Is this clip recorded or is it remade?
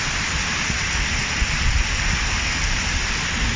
recorded